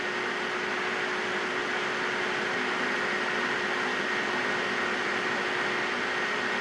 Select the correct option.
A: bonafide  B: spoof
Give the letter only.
A